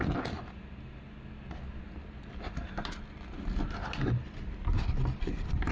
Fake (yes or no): no